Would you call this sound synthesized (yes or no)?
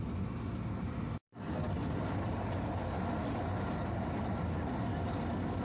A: no